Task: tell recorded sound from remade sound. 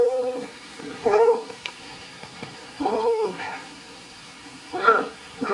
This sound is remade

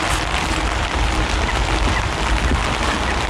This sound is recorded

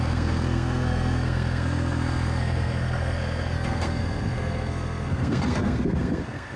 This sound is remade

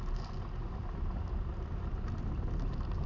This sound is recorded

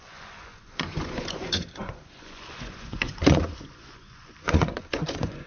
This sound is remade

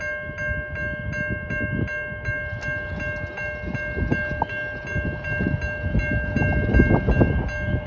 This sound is recorded